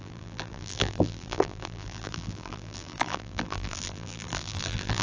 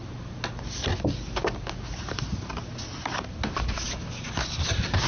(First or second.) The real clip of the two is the second